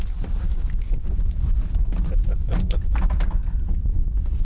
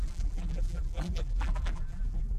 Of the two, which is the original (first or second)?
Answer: first